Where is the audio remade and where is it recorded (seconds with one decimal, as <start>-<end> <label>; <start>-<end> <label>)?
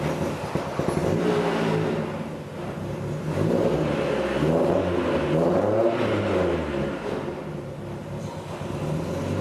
0.0-9.4 recorded